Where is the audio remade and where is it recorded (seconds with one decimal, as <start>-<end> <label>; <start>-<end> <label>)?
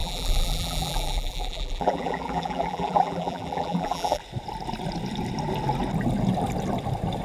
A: 0.0-4.2 remade; 4.2-7.2 recorded